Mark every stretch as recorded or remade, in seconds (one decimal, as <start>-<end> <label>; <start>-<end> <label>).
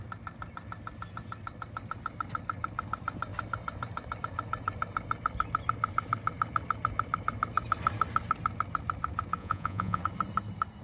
0.0-9.4 recorded; 9.4-10.0 remade; 10.0-10.8 recorded